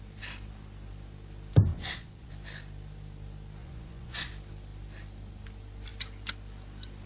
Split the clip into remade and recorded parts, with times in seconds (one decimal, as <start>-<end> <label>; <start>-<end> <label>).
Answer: 0.0-1.7 recorded; 1.7-2.3 remade; 2.3-3.6 recorded; 3.6-4.3 remade; 4.3-7.1 recorded